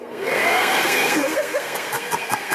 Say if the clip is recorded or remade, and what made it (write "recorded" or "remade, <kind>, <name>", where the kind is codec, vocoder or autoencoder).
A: remade, codec, SNAC